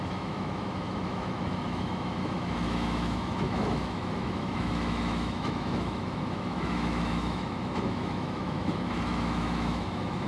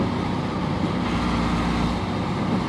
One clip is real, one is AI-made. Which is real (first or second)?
second